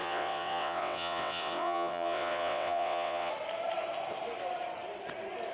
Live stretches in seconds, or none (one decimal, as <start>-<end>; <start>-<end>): 3.3-5.5